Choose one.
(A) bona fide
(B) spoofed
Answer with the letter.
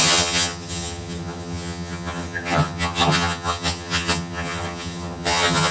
B